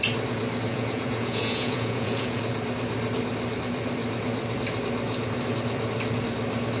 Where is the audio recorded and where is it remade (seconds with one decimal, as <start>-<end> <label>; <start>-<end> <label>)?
0.0-0.7 recorded; 0.7-2.4 remade; 2.4-6.8 recorded